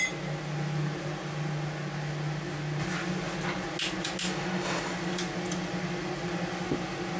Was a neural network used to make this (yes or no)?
no